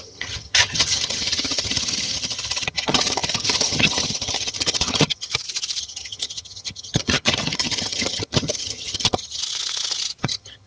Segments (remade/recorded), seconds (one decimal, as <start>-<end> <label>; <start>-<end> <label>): 0.0-5.3 remade; 5.3-5.8 recorded; 5.8-9.4 remade; 9.4-10.2 recorded; 10.2-10.7 remade